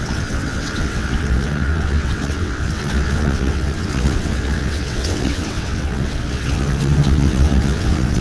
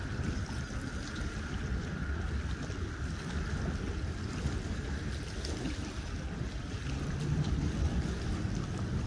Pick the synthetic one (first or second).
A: first